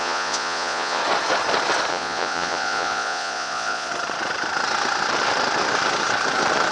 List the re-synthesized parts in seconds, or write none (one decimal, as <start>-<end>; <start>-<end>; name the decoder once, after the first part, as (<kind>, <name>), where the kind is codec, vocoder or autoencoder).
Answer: 0.0-1.0 (vocoder, Vocos); 1.9-3.9